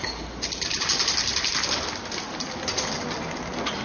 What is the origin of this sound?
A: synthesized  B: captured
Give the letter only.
B